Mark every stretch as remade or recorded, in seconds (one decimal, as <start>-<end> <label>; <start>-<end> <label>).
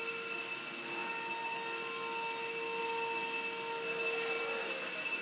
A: 0.0-5.2 recorded